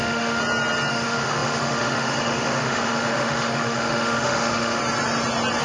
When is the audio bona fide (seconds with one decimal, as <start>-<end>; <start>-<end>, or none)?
0.4-0.9; 4.8-5.6